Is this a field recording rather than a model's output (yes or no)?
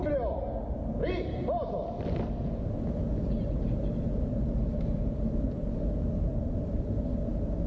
yes